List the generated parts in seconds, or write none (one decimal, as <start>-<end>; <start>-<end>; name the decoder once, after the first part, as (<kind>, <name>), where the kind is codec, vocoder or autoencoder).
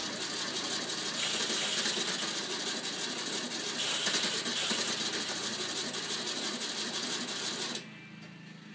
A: none